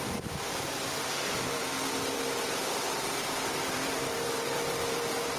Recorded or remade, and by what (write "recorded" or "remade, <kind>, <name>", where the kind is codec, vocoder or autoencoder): remade, vocoder, BigVGAN v2